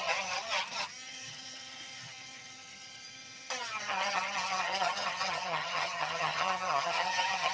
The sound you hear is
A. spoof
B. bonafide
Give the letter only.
A